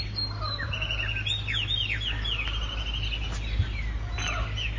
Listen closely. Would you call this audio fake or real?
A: real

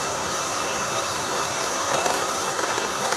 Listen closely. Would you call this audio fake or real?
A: fake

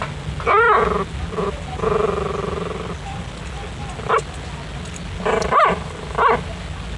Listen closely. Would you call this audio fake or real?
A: real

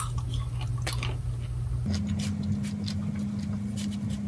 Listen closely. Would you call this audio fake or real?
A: real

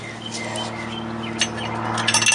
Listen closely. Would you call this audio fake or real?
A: real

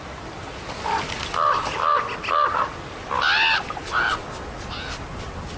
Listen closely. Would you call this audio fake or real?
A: real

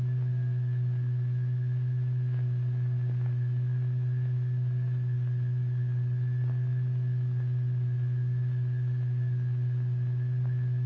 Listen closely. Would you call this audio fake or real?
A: real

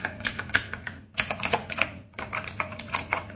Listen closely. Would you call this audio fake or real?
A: fake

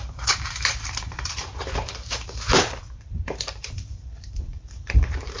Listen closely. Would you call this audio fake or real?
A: fake